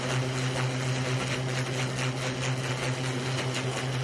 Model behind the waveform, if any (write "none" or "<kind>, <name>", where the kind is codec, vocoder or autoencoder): none